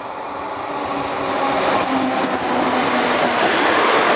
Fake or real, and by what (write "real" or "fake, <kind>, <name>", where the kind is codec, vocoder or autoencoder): real